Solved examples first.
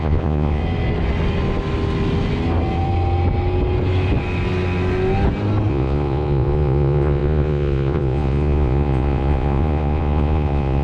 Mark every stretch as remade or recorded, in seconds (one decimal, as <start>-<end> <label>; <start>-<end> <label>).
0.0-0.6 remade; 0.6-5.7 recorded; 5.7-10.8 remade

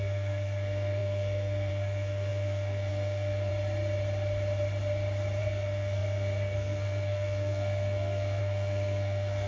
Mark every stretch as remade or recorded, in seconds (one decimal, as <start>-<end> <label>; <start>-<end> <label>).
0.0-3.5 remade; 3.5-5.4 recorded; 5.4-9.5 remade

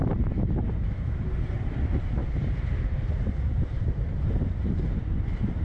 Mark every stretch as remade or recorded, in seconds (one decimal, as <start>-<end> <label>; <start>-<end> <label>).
0.0-5.6 remade